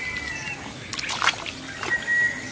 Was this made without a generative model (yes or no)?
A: yes